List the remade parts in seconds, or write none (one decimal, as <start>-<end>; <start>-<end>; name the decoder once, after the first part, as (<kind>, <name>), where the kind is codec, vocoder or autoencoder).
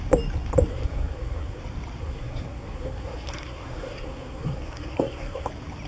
0.7-1.6 (codec, SNAC); 2.0-5.5